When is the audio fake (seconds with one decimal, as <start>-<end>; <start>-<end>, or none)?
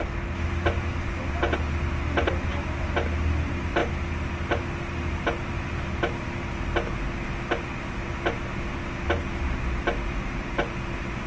none